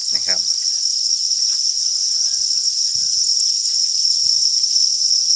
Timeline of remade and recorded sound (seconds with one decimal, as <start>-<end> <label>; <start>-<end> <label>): 0.0-5.4 recorded